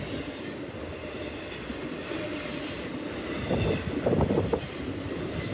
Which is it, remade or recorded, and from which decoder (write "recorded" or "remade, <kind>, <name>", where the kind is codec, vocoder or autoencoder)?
recorded